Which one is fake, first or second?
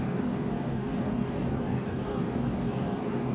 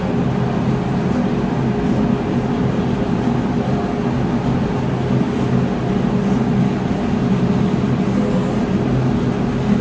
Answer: first